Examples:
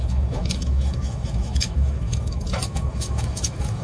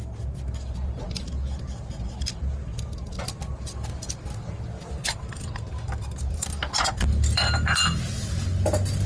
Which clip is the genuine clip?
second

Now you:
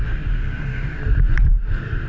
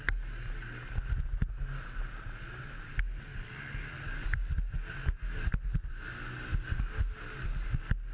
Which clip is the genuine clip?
second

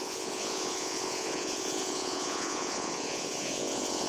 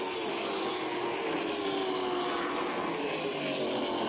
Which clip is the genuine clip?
second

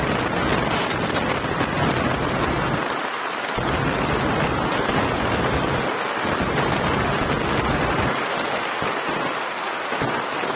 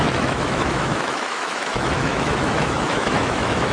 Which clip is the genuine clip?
first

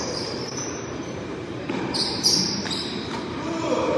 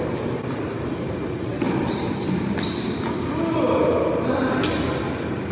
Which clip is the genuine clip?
second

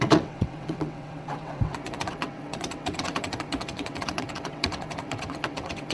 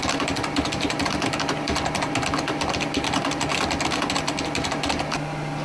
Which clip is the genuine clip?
second